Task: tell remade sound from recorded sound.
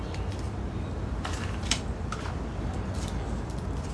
remade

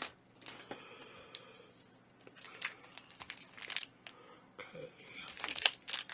recorded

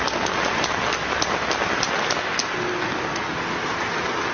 recorded